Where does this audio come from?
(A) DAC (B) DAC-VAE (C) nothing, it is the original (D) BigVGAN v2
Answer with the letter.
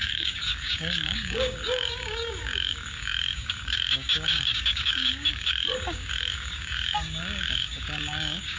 A